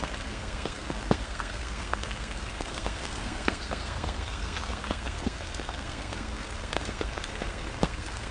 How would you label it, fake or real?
fake